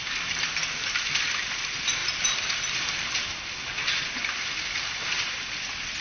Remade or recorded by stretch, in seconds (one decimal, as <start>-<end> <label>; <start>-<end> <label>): 0.0-6.0 recorded